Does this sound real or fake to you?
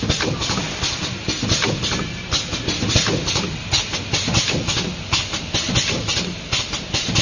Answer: real